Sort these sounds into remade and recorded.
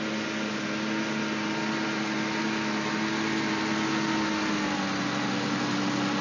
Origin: recorded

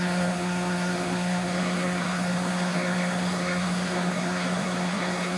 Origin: remade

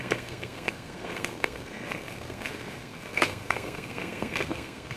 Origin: remade